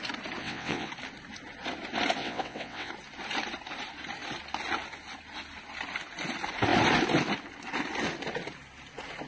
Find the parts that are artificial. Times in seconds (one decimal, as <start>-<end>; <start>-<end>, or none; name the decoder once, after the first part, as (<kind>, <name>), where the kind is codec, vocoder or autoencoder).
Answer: 0.4-0.9 (vocoder, WaveNeXt); 2.2-2.9